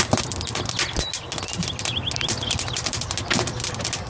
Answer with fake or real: real